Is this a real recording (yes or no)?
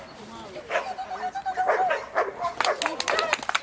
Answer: yes